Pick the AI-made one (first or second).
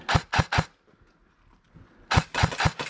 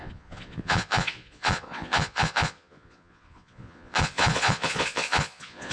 second